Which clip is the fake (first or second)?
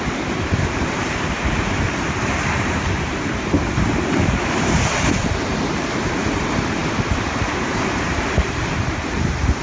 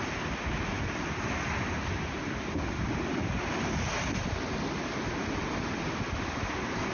first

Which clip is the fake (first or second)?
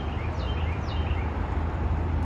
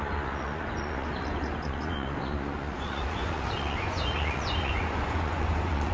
second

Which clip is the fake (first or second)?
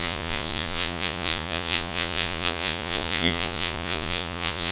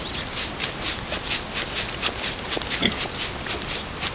first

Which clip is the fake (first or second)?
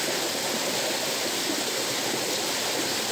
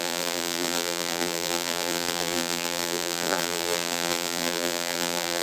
second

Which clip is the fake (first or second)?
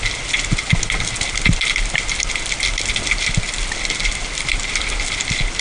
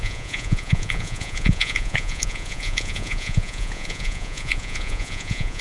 second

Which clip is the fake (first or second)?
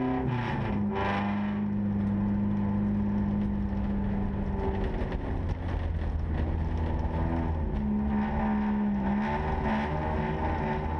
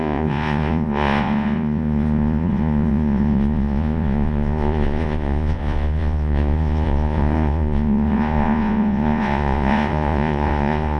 second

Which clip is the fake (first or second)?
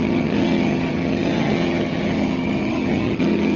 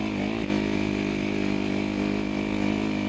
first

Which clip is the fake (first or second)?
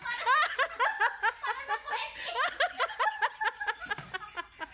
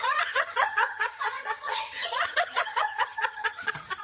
second